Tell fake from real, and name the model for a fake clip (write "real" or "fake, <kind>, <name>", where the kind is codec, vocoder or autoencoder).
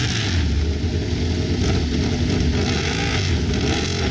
real